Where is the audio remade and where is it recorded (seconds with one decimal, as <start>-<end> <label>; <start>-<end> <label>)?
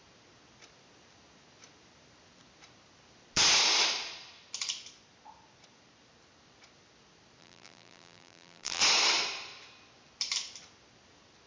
0.0-7.4 recorded; 7.4-8.8 remade; 8.8-11.5 recorded